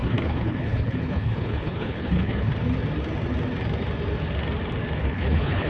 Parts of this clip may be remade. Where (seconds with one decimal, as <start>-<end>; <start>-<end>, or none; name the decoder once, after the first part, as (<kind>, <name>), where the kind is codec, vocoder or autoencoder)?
0.0-2.5 (codec, HILCodec); 5.0-5.7